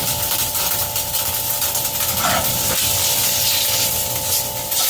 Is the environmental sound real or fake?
fake